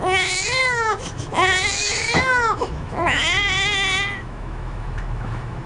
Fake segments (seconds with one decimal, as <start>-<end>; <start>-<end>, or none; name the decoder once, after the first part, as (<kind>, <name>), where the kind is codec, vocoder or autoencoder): 0.0-5.7 (autoencoder, DAC-VAE)